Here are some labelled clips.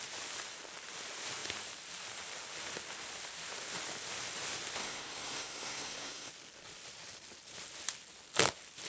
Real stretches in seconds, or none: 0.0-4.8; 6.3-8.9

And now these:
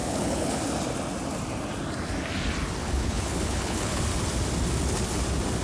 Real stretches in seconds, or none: 0.6-2.8; 4.0-5.6

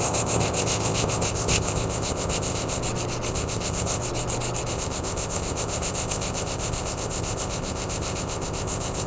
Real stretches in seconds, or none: 2.8-3.3; 4.0-4.7

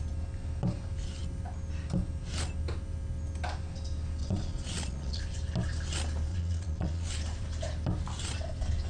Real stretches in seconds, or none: 0.0-4.2; 5.2-6.3; 7.1-8.9

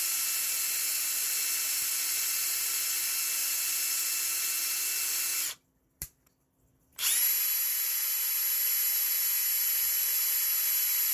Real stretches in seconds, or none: 0.0-11.1